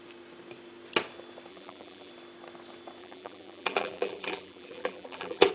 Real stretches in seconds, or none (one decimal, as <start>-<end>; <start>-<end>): 0.0-1.5; 2.1-3.0